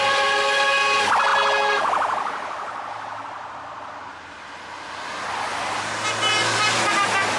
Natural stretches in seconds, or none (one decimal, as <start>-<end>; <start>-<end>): 0.0-7.4